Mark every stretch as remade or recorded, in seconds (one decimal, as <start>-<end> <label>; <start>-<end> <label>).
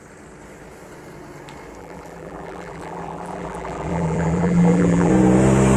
0.0-1.8 recorded; 1.8-5.1 remade; 5.1-5.8 recorded